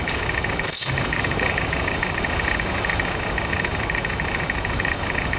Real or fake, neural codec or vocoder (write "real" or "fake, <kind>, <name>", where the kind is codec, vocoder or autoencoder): fake, autoencoder, DAC-VAE